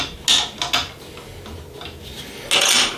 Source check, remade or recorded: recorded